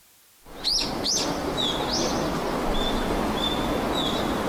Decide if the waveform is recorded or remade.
recorded